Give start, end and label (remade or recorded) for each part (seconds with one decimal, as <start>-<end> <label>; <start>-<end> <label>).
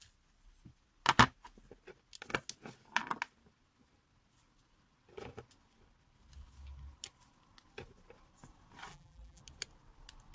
0.0-8.9 recorded; 8.9-9.4 remade; 9.4-10.3 recorded